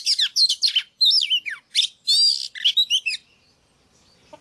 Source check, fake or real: real